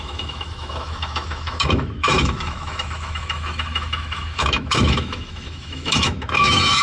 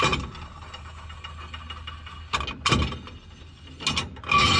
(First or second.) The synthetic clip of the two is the first